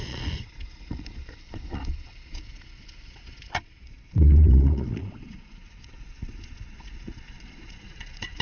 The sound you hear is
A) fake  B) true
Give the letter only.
A